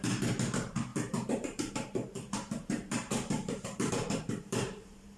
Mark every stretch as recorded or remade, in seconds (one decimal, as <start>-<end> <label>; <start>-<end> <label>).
0.0-5.2 remade